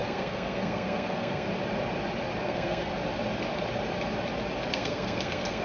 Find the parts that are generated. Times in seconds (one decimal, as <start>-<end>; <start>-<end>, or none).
0.0-1.5; 2.4-2.9; 4.7-5.6